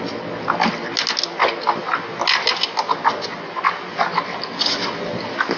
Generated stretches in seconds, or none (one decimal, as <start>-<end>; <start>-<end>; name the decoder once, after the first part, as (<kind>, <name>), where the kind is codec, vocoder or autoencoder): none